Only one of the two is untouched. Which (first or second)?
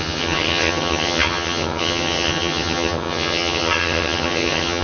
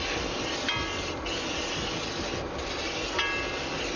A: second